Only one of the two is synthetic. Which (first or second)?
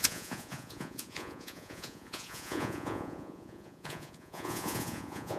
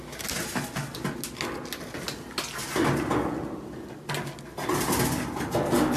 first